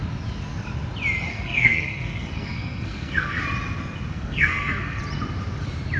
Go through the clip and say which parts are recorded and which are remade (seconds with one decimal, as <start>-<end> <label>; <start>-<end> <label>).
0.0-1.3 recorded; 1.3-3.4 remade; 3.4-4.1 recorded; 4.1-5.0 remade; 5.0-6.0 recorded